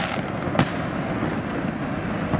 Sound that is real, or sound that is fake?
real